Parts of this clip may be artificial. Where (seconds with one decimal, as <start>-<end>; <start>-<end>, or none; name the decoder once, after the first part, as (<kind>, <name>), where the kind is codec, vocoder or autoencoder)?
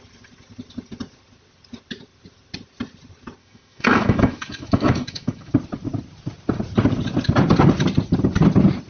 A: 3.4-5.5 (autoencoder, DAC-VAE)